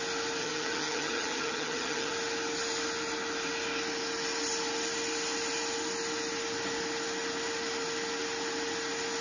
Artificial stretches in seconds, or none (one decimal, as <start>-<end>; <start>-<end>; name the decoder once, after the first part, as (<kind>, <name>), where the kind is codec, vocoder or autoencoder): 0.4-2.1 (vocoder, HiFi-GAN)